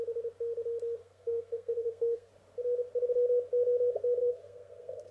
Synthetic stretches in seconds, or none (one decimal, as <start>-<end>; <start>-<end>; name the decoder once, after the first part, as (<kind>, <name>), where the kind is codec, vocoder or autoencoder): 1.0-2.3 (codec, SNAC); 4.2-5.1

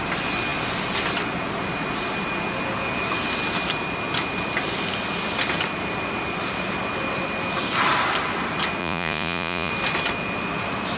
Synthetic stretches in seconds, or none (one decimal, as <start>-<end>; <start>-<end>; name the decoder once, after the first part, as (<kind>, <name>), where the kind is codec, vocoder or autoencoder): 8.8-9.7 (vocoder, Vocos)

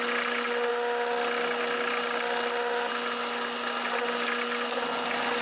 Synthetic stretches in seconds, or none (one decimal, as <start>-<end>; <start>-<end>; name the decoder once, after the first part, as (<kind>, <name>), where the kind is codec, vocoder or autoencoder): none

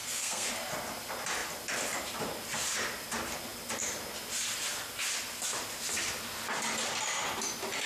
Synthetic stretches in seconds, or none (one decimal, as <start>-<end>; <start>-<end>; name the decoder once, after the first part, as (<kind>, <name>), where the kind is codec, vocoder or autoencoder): 0.0-0.5 (codec, SNAC)